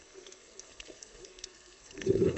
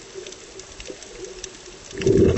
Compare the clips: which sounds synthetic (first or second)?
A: first